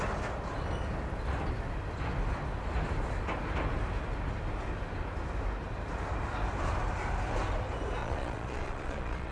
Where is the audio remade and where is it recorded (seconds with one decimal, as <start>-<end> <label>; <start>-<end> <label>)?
0.0-8.0 recorded; 8.0-9.3 remade

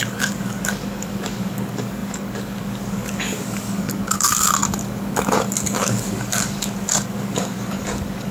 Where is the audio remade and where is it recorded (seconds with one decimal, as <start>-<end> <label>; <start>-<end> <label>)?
0.0-8.3 remade

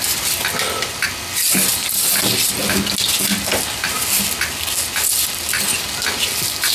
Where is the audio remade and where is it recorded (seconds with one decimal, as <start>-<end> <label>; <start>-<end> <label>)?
0.0-6.7 recorded

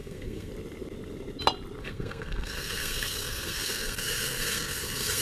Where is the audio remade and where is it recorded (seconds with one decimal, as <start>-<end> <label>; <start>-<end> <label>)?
0.0-0.5 remade; 0.5-1.8 recorded; 1.8-5.2 remade

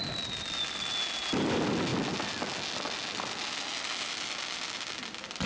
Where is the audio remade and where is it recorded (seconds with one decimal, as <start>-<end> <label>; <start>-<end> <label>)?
0.0-5.5 recorded

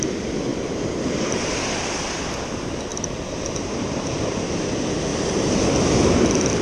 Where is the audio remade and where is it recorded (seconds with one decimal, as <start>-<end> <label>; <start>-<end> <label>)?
0.0-0.5 recorded; 0.5-1.6 remade; 1.6-2.9 recorded; 2.9-4.6 remade; 4.6-5.1 recorded; 5.1-5.7 remade; 5.7-6.6 recorded